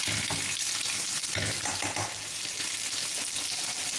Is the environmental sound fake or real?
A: real